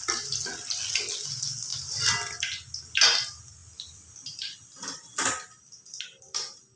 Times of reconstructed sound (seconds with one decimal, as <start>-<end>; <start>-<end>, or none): none